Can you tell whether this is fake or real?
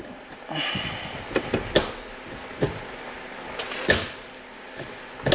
real